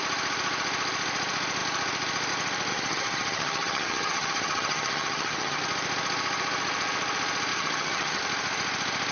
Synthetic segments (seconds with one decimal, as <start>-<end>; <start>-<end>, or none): 2.7-5.6; 7.5-8.2